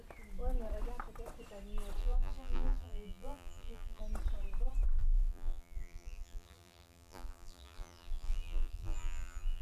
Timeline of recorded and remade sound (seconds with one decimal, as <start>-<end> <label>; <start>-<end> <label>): 0.0-2.0 recorded; 2.0-4.0 remade; 4.0-5.0 recorded; 5.0-9.6 remade